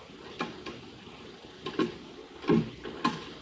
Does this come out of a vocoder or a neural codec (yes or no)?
no